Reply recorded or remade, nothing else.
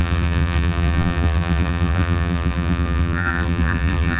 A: remade